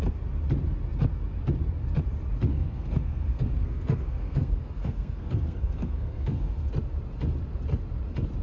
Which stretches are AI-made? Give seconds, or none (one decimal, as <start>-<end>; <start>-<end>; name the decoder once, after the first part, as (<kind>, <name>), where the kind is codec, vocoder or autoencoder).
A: 2.5-6.7 (codec, SNAC)

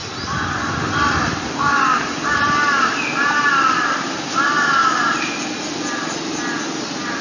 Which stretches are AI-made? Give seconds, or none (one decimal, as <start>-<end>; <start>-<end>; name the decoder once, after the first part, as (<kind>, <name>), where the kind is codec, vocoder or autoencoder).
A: none

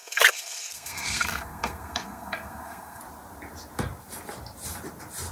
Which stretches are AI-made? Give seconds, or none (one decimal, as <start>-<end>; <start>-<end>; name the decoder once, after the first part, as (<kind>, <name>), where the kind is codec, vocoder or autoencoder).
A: 0.0-3.0 (codec, SNAC)

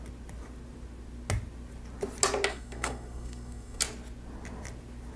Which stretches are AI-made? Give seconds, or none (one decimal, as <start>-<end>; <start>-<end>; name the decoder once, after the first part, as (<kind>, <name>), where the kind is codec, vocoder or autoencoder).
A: 2.5-3.8 (codec, SNAC)

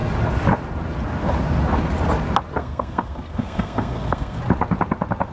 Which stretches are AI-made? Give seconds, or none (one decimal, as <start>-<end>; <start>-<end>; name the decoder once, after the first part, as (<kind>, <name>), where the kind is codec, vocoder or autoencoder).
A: 2.6-4.4 (codec, SNAC)

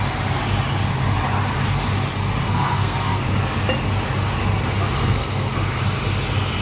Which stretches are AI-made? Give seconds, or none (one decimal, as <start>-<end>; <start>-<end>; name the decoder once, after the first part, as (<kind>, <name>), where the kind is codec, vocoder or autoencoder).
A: 2.4-3.3 (codec, SNAC); 5.0-5.8

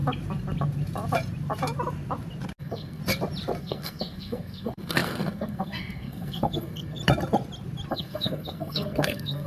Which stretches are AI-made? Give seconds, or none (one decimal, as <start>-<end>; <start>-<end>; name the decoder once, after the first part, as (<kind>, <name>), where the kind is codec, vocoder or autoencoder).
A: 2.6-3.0 (codec, SNAC); 3.6-7.0; 7.9-9.5